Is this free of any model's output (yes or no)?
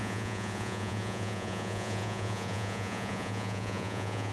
no